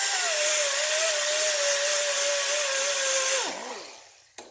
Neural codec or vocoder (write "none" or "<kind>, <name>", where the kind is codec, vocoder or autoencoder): none